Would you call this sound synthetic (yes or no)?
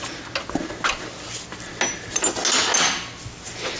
no